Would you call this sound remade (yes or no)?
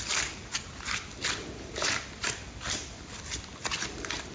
no